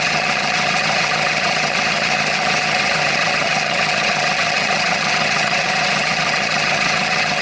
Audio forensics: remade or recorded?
remade